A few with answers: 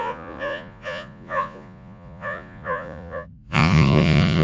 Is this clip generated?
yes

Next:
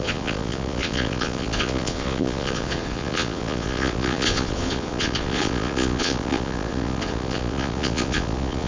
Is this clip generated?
yes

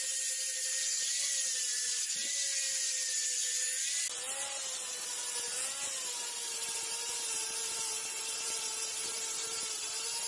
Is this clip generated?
no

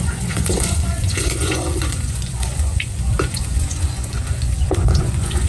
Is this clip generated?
yes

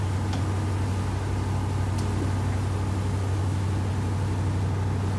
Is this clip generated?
no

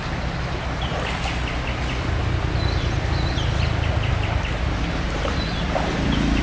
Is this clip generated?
no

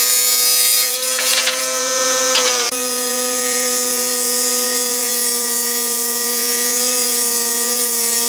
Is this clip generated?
yes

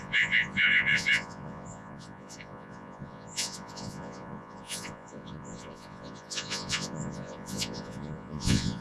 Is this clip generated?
yes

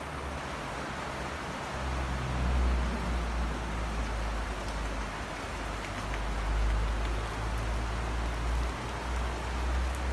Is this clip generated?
no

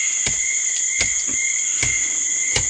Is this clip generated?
no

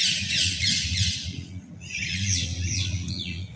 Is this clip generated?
yes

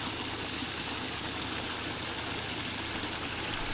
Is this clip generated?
no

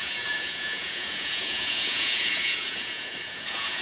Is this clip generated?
yes